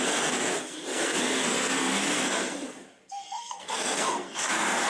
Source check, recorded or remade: remade